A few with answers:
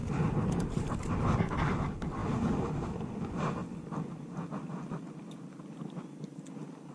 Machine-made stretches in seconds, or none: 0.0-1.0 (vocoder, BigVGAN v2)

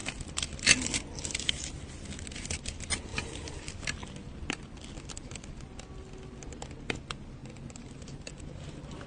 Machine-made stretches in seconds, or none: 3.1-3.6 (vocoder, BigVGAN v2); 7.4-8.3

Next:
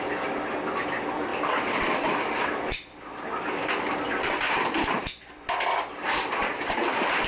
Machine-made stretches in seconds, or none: 1.3-5.0 (vocoder, BigVGAN v2)

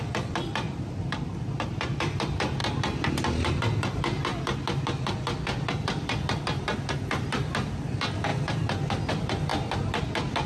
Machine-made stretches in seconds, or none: 0.0-2.6 (vocoder, BigVGAN v2); 3.6-4.3; 6.4-8.3; 9.1-9.5

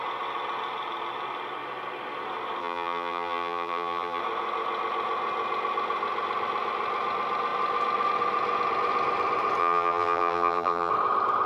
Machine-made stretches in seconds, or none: 2.6-4.2 (vocoder, BigVGAN v2); 9.6-10.9

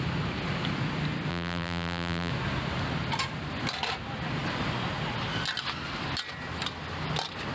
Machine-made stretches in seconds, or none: 1.3-2.3 (vocoder, BigVGAN v2)